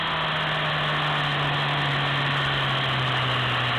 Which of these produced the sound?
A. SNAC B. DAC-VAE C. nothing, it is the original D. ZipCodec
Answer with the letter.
C